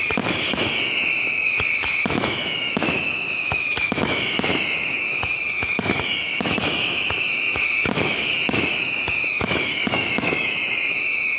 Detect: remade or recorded remade